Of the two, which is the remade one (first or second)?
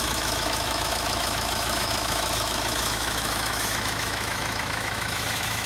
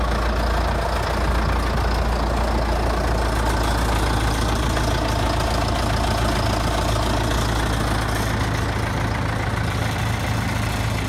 first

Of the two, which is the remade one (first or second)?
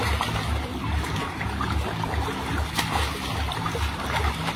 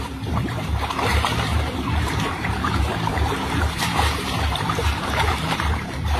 second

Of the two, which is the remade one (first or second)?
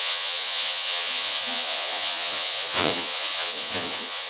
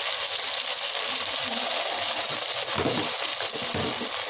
first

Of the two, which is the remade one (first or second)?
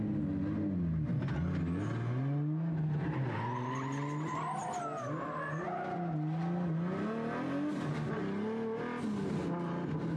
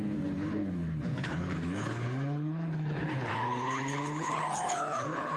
second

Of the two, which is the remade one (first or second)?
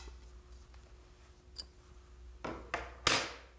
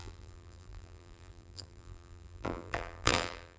second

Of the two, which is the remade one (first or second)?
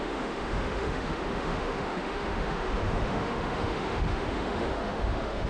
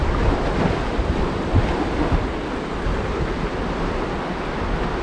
first